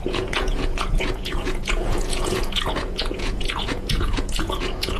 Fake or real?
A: fake